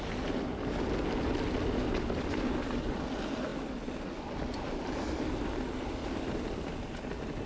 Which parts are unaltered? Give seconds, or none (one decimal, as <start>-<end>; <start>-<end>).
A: 0.0-7.5